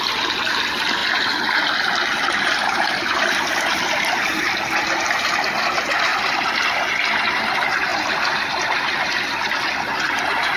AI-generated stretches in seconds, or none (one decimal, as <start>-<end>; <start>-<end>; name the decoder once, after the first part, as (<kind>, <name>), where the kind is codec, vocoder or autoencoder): 1.0-4.1 (vocoder, BigVGAN v2); 6.1-6.8; 7.9-9.6